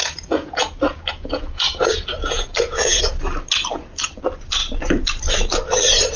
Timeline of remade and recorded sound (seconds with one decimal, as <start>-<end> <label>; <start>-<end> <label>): 0.0-3.0 remade; 3.0-6.2 recorded